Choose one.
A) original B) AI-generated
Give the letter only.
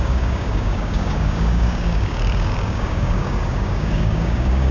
B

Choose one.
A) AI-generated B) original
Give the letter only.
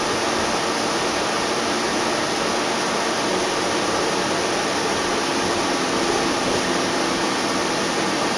B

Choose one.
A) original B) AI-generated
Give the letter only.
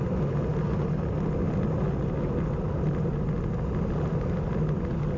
A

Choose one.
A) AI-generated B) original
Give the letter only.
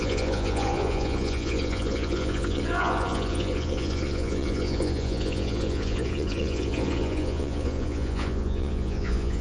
A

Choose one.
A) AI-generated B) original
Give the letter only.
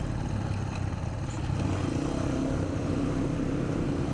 B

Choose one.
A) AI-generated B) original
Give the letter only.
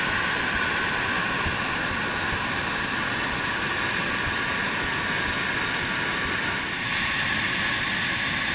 B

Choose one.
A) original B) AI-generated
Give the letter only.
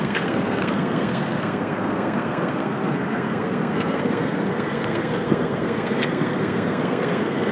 B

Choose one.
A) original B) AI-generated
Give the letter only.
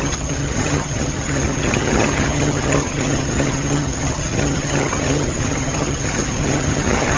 B